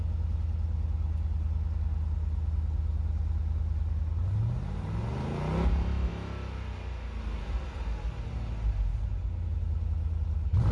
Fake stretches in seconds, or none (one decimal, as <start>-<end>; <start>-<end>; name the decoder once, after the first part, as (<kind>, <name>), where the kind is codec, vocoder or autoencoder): none